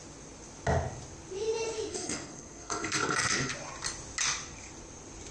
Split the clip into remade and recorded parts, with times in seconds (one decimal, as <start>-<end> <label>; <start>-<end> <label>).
0.0-1.9 recorded; 1.9-3.5 remade; 3.5-5.3 recorded